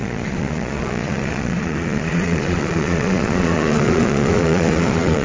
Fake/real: fake